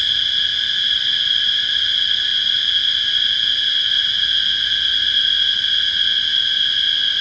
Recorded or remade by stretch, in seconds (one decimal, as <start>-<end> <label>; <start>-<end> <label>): 0.0-7.2 recorded